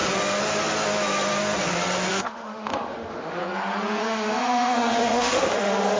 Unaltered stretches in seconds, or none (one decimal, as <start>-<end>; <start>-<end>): 0.0-2.1; 3.4-4.0